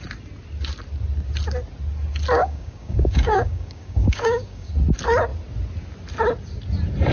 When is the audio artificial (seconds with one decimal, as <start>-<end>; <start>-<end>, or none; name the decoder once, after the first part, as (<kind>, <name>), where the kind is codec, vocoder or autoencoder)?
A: 2.4-4.7 (codec, DAC)